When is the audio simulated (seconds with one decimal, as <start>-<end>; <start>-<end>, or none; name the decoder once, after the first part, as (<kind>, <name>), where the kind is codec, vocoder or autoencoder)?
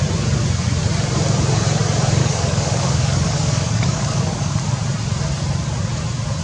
2.2-4.5 (codec, DAC)